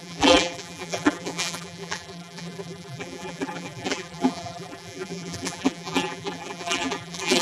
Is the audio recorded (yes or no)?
no